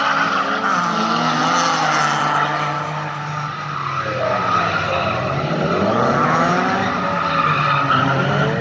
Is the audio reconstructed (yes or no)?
no